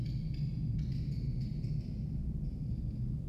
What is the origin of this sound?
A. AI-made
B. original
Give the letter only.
B